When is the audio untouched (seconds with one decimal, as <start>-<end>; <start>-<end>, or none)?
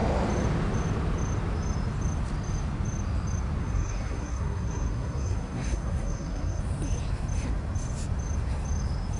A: 0.0-3.6; 6.6-9.2